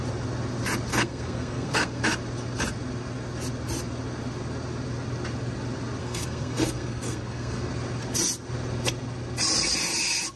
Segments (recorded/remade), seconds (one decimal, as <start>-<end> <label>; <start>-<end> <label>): 0.0-0.9 recorded; 0.9-2.0 remade; 2.0-6.0 recorded; 6.0-7.7 remade; 7.7-10.4 recorded